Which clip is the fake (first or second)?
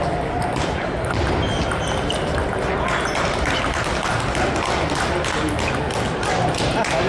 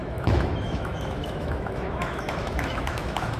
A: second